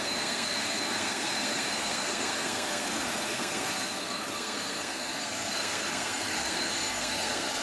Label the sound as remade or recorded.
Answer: remade